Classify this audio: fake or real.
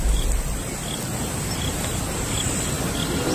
real